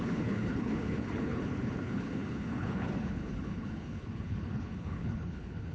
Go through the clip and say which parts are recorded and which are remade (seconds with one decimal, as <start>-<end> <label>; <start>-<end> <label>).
0.0-5.7 remade